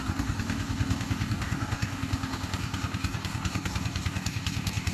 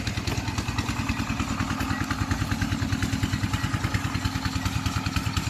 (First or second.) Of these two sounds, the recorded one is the second